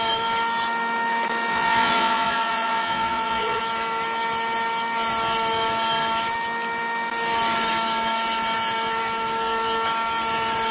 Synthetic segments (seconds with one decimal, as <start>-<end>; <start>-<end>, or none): 1.5-3.6